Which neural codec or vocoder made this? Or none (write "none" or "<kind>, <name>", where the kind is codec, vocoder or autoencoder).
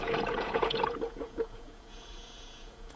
vocoder, Vocos